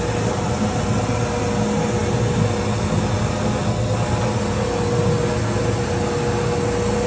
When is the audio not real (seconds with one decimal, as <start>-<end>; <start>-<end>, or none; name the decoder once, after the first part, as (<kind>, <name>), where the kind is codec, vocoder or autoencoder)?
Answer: none